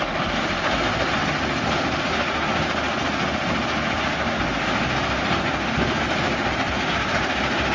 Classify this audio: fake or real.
real